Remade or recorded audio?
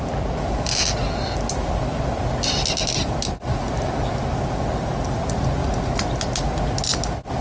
recorded